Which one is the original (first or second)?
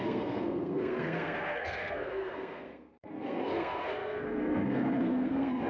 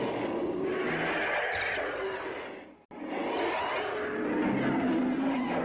second